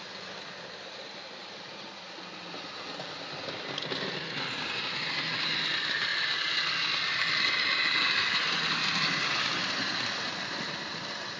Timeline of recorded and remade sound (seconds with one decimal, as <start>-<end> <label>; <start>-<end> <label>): 0.0-11.4 recorded